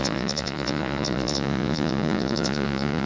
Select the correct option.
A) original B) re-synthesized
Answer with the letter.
B